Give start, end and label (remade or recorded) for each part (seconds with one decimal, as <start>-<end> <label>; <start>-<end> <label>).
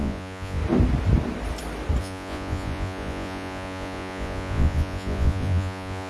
0.0-0.6 remade; 0.6-2.0 recorded; 2.0-6.1 remade